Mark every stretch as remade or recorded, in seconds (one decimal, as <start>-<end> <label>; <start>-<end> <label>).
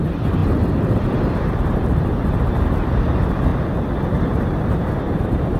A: 0.0-0.4 remade; 0.4-1.3 recorded; 1.3-3.5 remade; 3.5-4.1 recorded; 4.1-5.6 remade